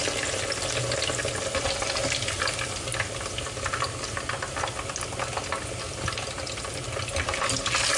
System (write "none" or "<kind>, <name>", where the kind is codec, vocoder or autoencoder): none